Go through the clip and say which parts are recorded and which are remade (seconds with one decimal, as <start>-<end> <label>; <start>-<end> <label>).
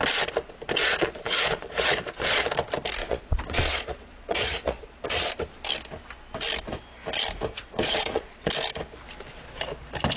0.0-0.8 recorded; 0.8-2.5 remade; 2.5-3.0 recorded; 3.0-5.3 remade; 5.3-7.5 recorded; 7.5-8.5 remade; 8.5-10.2 recorded